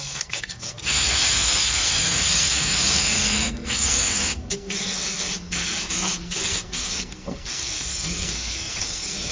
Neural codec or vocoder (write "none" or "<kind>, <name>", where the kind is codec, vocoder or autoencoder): codec, SNAC